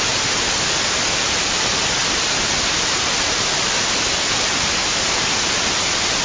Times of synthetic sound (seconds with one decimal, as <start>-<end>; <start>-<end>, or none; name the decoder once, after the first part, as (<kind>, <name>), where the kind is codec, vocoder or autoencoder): none